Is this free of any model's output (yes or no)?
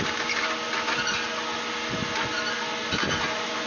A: yes